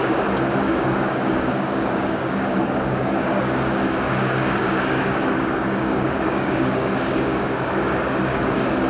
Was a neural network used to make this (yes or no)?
yes